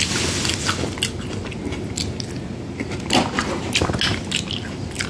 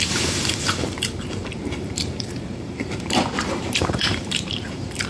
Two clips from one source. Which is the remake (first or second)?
second